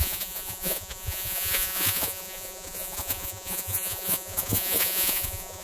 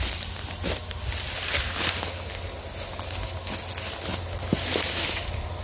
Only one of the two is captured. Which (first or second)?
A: second